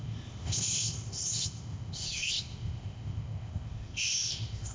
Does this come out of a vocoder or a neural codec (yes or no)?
yes